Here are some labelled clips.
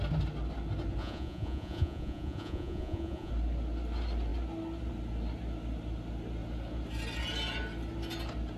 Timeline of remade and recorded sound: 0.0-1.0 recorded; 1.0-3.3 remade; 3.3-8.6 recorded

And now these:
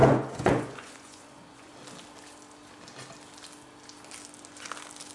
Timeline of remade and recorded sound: 0.0-1.7 remade; 1.7-5.1 recorded

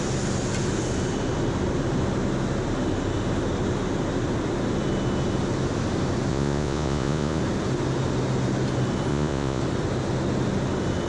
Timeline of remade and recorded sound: 0.0-6.3 recorded; 6.3-7.4 remade; 7.4-9.1 recorded; 9.1-9.6 remade; 9.6-11.1 recorded

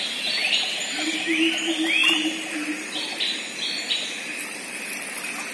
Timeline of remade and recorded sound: 0.0-5.5 recorded